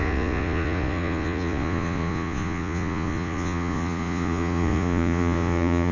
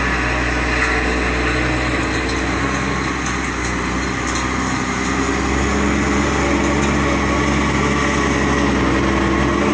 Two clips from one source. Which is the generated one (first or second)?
first